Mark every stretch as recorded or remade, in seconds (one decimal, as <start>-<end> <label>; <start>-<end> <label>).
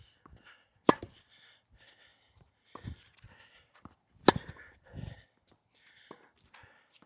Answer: 0.0-7.1 recorded